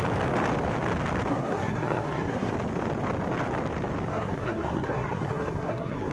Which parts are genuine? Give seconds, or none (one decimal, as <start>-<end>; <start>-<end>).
0.0-1.3; 2.5-4.1